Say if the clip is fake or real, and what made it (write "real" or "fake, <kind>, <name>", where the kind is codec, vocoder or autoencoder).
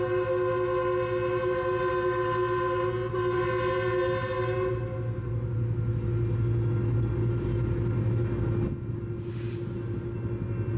real